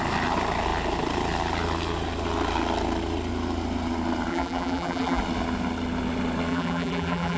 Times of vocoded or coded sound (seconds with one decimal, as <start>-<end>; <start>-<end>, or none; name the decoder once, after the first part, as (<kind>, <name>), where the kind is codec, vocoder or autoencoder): 4.3-5.2 (vocoder, BigVGAN v2); 6.5-7.4